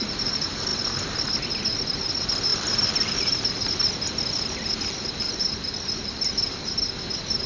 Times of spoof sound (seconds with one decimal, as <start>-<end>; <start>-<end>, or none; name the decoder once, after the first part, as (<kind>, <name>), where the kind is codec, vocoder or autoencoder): none